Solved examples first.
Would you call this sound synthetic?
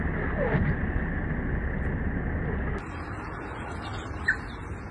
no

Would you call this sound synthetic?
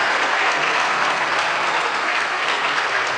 yes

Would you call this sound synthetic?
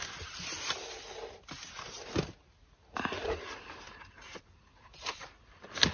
no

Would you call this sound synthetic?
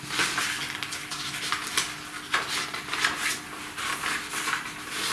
no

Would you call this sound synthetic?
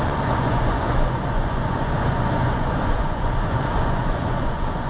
yes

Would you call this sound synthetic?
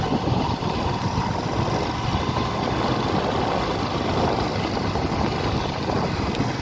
no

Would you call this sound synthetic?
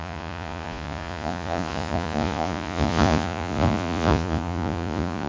yes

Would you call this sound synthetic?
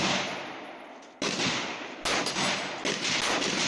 no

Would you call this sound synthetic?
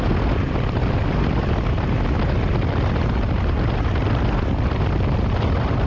no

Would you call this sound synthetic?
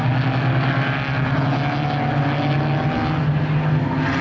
no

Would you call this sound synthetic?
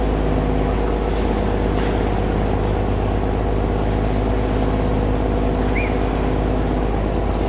no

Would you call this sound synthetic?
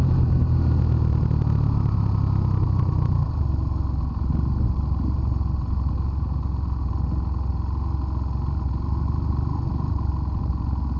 no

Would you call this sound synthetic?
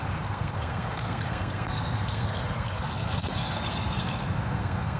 yes